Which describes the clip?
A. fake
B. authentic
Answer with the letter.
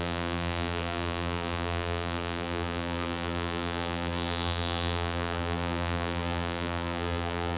A